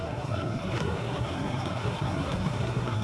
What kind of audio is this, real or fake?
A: fake